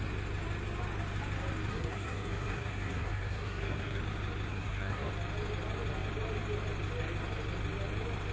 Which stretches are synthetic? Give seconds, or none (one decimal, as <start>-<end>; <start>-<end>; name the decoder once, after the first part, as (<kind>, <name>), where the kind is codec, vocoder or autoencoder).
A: 1.7-4.0 (codec, SNAC); 4.5-5.1